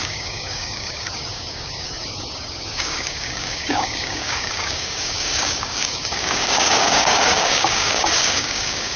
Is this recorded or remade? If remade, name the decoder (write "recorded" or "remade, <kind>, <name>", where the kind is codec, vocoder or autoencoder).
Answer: remade, codec, DAC